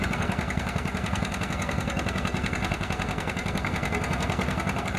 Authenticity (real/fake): fake